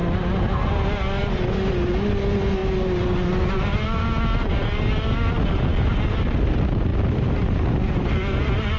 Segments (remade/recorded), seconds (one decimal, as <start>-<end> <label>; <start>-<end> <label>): 0.0-8.8 recorded